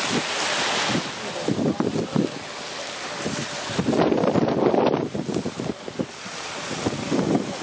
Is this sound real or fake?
real